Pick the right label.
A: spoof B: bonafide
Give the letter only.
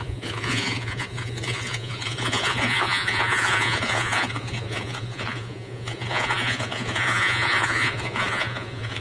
A